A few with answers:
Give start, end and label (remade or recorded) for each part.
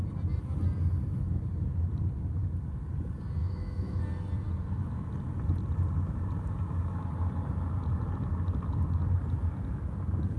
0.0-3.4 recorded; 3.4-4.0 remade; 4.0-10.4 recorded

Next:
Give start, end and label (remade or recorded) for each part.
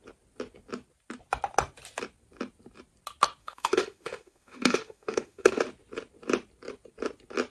0.0-3.4 recorded; 3.4-5.6 remade; 5.6-7.5 recorded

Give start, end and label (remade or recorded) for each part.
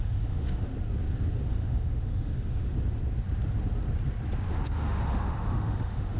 0.0-0.7 remade; 0.7-1.5 recorded; 1.5-2.6 remade; 2.6-4.5 recorded; 4.5-6.2 remade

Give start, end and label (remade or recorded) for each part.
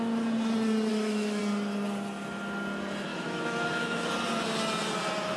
0.0-0.9 recorded; 0.9-1.4 remade; 1.4-3.1 recorded; 3.1-4.1 remade; 4.1-5.4 recorded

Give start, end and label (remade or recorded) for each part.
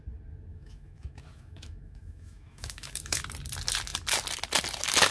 0.0-0.5 recorded; 0.5-3.2 remade; 3.2-5.1 recorded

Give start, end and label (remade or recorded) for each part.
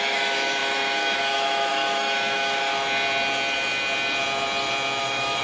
0.0-2.7 remade; 2.7-5.0 recorded; 5.0-5.4 remade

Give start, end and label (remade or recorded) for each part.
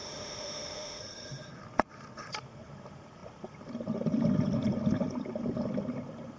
0.0-1.0 remade; 1.0-6.4 recorded